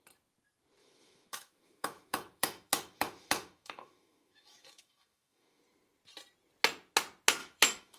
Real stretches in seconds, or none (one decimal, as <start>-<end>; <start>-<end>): 0.0-0.8; 5.6-7.4